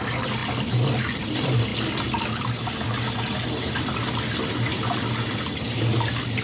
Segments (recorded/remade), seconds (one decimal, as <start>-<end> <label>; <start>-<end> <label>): 0.0-6.4 recorded